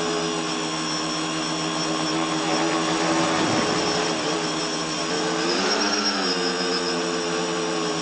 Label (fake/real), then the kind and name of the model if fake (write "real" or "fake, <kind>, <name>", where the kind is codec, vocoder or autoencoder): real